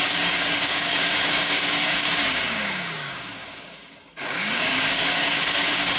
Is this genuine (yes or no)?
no